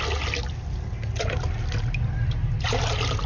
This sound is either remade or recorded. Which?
recorded